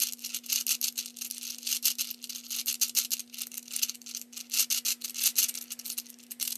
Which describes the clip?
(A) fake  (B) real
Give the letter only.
B